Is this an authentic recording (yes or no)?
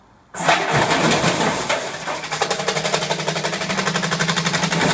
yes